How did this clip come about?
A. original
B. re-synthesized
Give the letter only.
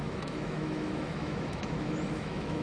B